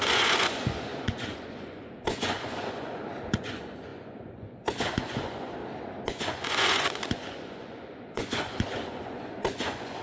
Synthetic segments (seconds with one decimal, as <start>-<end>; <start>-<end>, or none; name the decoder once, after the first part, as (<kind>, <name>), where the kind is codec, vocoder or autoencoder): 0.0-5.6 (vocoder, Vocos); 6.1-10.0